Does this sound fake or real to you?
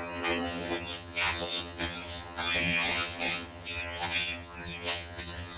fake